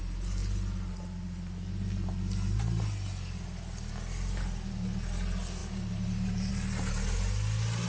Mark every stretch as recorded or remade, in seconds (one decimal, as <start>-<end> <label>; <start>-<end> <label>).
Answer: 0.0-7.9 recorded